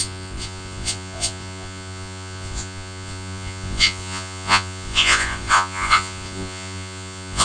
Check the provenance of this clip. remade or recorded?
remade